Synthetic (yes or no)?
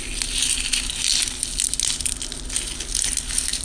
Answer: no